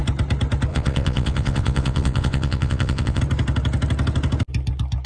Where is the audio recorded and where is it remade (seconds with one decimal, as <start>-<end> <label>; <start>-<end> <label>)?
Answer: 0.0-0.7 recorded; 0.7-3.2 remade; 3.2-5.1 recorded